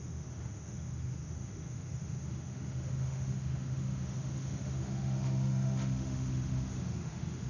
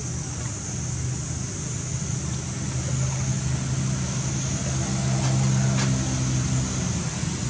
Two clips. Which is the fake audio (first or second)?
first